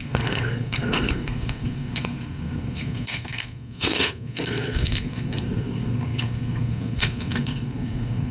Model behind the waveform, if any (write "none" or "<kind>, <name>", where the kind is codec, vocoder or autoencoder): codec, SNAC